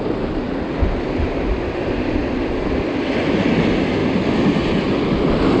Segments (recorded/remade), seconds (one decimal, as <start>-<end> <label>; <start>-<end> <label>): 0.0-5.6 recorded